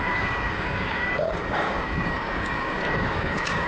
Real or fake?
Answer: fake